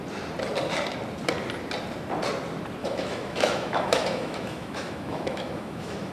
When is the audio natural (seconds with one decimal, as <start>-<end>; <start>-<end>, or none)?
0.0-2.8